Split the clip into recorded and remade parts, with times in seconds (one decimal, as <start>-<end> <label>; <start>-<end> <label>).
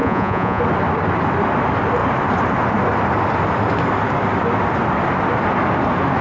0.0-0.6 remade; 0.6-6.2 recorded